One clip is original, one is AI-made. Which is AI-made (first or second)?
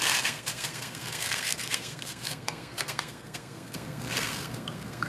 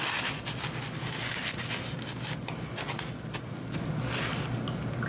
first